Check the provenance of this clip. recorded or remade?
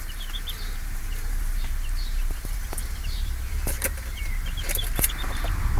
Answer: remade